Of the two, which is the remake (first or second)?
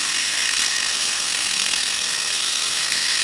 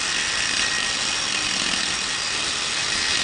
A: first